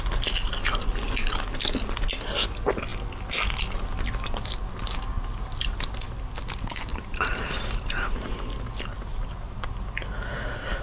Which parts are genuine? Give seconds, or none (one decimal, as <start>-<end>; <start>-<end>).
0.0-6.9; 8.5-9.1; 9.7-10.8